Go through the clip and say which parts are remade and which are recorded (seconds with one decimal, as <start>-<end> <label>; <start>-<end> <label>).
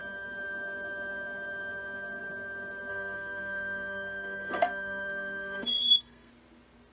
0.0-2.9 recorded; 2.9-6.3 remade; 6.3-6.9 recorded